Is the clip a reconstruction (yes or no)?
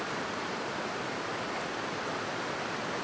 no